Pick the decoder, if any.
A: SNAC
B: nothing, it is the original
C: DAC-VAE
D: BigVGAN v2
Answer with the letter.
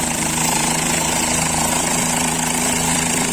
D